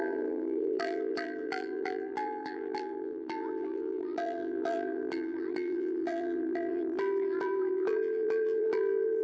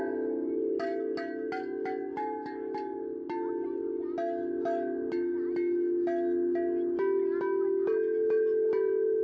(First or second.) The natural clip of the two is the second